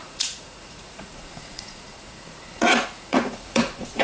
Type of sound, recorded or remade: remade